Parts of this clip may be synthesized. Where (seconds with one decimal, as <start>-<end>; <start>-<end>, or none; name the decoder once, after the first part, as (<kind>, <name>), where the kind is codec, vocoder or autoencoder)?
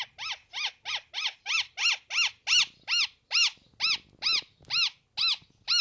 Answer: none